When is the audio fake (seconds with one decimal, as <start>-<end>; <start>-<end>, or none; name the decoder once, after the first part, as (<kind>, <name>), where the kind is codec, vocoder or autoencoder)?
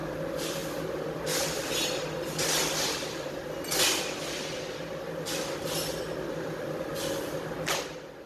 none